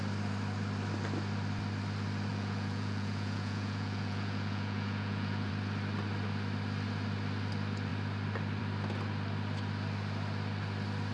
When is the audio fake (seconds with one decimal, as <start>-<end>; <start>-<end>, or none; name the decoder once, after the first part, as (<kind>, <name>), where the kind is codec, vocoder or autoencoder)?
2.3-5.5 (vocoder, Vocos)